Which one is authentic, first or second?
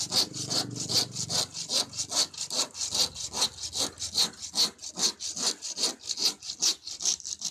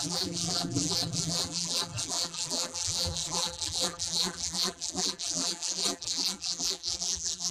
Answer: first